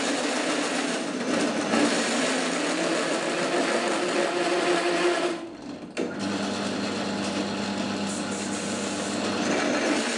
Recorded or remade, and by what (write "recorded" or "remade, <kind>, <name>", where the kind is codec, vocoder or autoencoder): recorded